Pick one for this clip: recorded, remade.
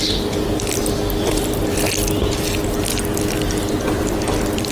recorded